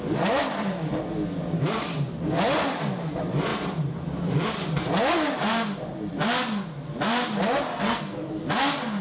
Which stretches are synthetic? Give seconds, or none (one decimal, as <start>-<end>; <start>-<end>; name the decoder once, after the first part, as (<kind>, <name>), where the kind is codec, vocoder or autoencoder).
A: 7.7-8.3 (codec, SNAC)